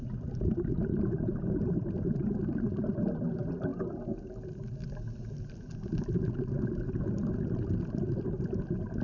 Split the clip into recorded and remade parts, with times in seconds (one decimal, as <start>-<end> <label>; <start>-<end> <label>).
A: 0.0-9.0 recorded